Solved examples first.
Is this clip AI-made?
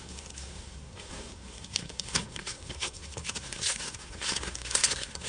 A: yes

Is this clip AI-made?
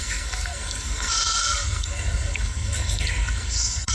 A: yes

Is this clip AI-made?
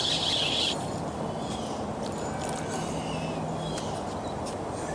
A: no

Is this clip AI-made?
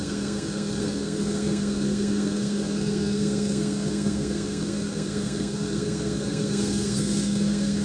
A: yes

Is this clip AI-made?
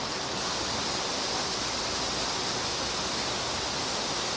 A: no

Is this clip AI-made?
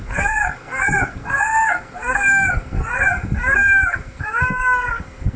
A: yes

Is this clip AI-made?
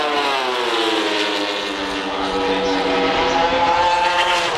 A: no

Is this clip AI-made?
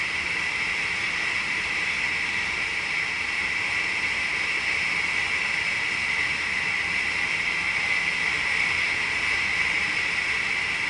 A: no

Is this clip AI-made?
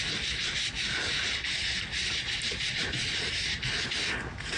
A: no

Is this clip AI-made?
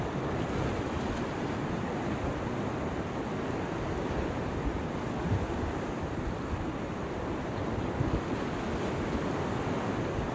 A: no